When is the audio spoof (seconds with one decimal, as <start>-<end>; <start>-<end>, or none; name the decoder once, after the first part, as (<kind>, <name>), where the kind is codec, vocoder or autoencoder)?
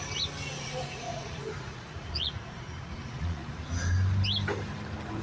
0.5-3.6 (vocoder, Vocos)